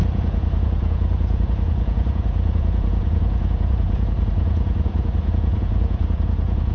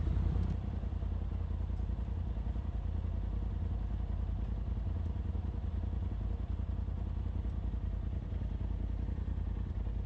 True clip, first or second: second